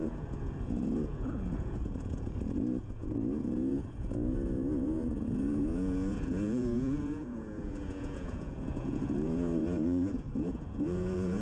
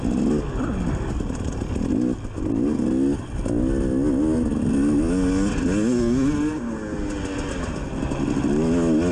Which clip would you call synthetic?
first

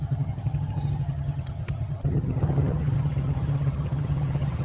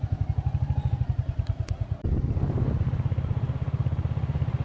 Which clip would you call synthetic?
first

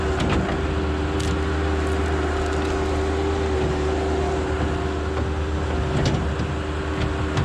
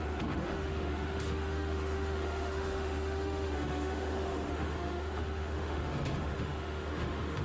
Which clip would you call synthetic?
second